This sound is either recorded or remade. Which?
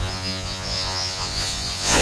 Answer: remade